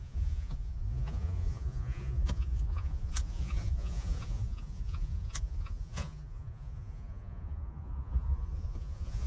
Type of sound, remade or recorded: remade